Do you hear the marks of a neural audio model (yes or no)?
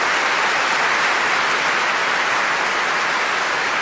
no